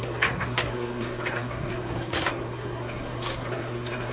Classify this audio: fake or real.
fake